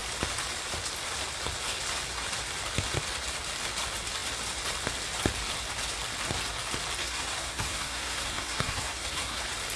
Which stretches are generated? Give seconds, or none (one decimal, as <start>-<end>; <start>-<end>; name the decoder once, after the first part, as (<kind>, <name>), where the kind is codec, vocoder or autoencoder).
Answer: 7.0-9.4 (codec, SNAC)

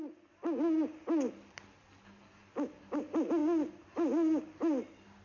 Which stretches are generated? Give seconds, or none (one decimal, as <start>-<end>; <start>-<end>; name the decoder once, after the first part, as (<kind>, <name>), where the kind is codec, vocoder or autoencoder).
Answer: none

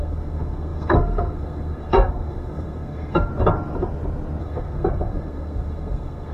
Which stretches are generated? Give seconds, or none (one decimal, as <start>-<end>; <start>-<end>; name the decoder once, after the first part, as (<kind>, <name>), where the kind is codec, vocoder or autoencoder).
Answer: 0.0-3.3 (codec, SNAC); 4.4-6.3

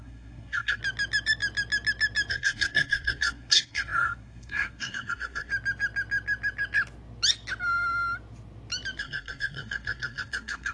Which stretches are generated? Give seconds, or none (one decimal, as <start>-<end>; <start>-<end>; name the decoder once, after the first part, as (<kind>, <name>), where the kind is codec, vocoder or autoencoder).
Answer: 0.0-0.8 (codec, SNAC); 2.3-5.5; 9.0-10.7

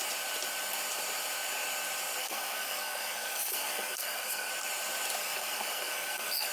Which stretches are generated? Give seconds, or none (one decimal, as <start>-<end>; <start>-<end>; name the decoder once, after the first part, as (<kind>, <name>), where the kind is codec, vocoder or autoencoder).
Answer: 2.2-4.5 (codec, SNAC); 5.2-6.5